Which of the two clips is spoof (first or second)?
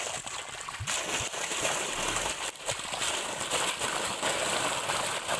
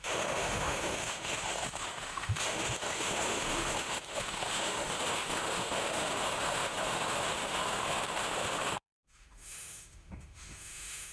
second